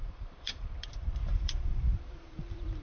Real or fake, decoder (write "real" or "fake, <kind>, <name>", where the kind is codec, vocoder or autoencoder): fake, vocoder, BigVGAN v2